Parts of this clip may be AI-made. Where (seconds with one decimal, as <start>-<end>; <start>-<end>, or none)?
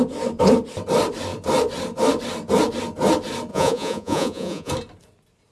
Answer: 3.5-4.7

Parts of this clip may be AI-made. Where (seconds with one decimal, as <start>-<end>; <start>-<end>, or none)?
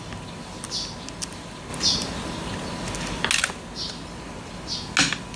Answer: none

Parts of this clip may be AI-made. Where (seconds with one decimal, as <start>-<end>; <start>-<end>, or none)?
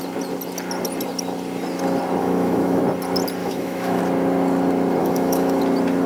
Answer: 2.2-2.8; 3.4-4.0; 5.0-5.6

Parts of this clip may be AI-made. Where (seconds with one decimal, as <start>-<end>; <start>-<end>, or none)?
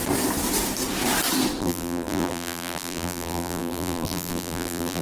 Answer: 1.6-5.0